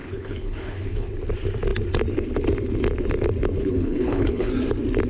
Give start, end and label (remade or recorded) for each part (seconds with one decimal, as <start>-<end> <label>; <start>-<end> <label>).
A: 0.0-1.1 remade; 1.1-3.6 recorded; 3.6-4.5 remade; 4.5-5.1 recorded